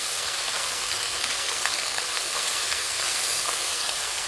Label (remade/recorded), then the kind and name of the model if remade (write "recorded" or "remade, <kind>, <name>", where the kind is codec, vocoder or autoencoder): remade, codec, SNAC